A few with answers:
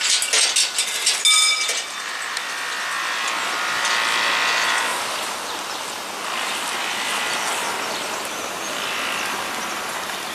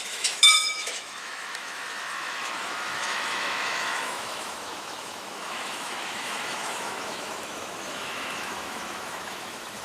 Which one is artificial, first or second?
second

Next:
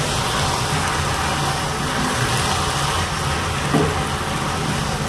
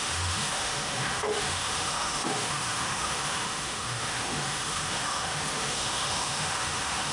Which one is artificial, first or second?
second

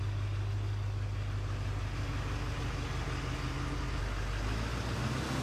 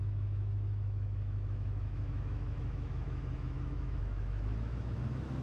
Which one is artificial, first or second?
second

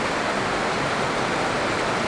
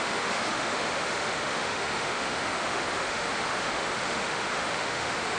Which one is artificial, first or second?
second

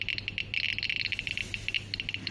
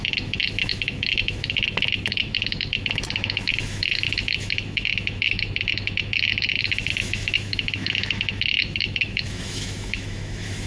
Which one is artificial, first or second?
second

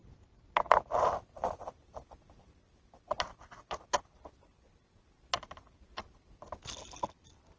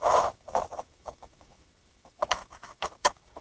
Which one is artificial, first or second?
second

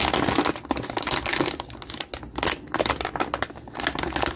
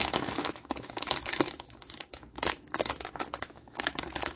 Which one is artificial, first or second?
second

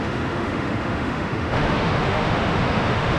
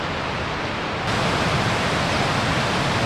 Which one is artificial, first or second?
first